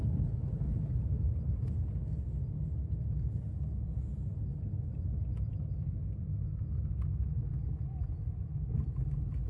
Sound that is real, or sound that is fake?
real